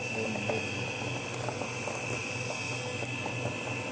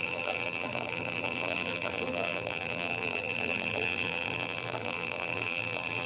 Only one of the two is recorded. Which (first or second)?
first